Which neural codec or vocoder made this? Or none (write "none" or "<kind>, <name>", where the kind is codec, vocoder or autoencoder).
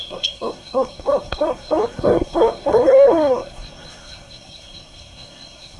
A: codec, SNAC